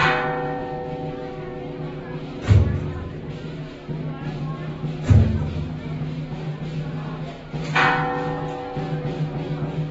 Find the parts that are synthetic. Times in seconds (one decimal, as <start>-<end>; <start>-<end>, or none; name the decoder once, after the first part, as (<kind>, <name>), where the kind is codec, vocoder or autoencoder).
none